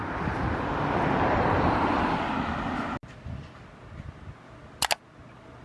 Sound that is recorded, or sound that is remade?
recorded